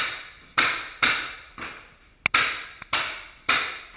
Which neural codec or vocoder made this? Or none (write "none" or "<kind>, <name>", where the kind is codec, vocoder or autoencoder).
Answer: none